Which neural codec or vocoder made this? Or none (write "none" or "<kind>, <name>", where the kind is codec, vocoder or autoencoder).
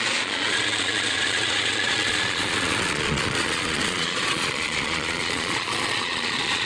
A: vocoder, Vocos